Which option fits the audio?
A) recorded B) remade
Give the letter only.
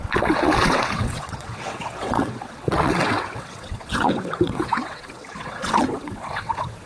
B